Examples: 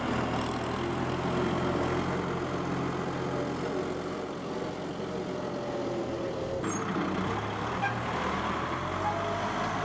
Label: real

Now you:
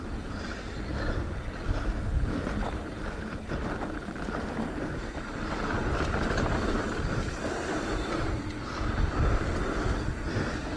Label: real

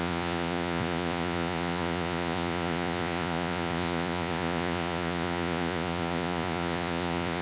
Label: fake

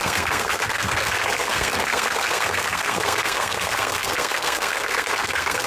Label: fake